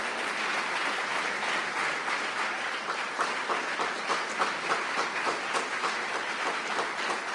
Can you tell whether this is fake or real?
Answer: real